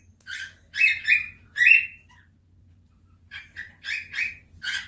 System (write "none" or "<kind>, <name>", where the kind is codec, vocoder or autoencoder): none